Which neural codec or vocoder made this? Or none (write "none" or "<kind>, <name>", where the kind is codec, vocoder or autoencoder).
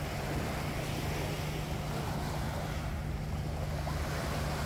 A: none